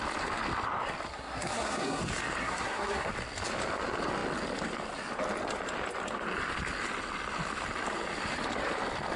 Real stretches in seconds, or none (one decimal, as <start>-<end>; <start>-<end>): 0.0-1.1; 2.0-2.4; 3.1-9.2